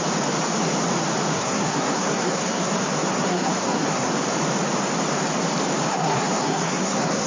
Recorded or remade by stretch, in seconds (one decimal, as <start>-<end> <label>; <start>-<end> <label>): 0.0-1.3 recorded; 1.3-4.1 remade; 4.1-5.9 recorded; 5.9-7.3 remade